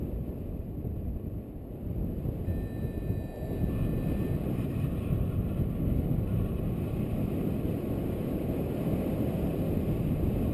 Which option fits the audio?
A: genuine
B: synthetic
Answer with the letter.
A